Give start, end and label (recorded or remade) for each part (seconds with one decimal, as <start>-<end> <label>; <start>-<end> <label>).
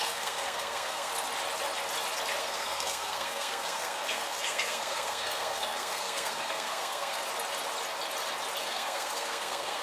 0.0-1.1 remade; 1.1-2.4 recorded; 2.4-7.2 remade; 7.2-8.6 recorded; 8.6-9.8 remade